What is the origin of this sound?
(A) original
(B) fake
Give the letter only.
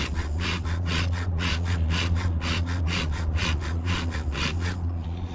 B